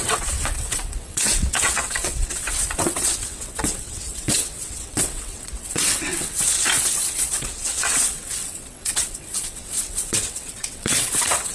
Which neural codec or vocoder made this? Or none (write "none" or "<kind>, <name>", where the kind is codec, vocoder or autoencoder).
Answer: vocoder, WaveNeXt